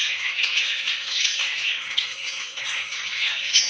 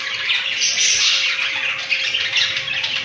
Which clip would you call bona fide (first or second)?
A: second